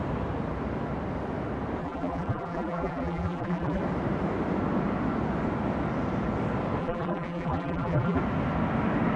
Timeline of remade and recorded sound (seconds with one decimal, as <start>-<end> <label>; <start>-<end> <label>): 0.0-1.8 recorded; 1.8-3.8 remade; 3.8-6.8 recorded; 6.8-8.2 remade; 8.2-9.2 recorded